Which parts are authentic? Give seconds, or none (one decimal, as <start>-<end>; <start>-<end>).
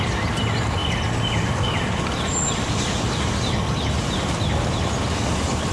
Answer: 0.0-5.7